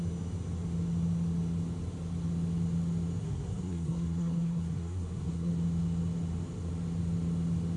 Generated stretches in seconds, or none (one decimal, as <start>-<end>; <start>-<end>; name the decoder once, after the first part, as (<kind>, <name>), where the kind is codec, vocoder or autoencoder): 3.2-5.5 (codec, SNAC)